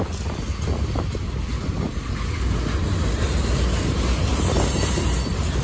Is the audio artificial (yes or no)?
no